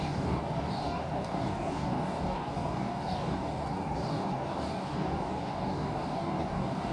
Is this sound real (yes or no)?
no